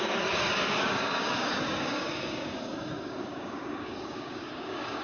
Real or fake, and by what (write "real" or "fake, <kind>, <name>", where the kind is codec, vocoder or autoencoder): fake, codec, DAC